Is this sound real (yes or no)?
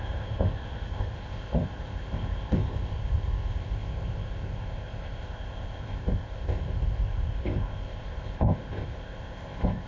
no